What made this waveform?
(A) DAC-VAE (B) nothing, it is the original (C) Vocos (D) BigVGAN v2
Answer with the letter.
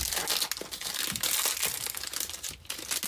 B